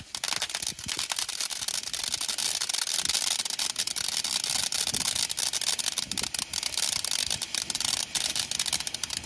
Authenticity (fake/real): real